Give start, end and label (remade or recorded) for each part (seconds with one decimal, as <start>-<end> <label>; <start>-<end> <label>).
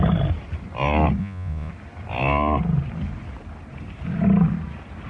0.0-1.2 recorded; 1.2-1.7 remade; 1.7-5.1 recorded